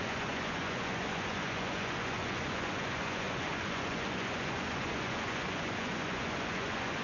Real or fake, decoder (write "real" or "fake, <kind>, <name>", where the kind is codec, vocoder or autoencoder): fake, vocoder, Vocos